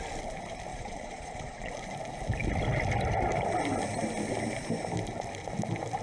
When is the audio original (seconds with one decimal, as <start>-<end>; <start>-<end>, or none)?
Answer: 0.0-0.7; 1.7-6.0